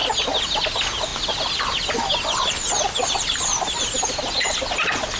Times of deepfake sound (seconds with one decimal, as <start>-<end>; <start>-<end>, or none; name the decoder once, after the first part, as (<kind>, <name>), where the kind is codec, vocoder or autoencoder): none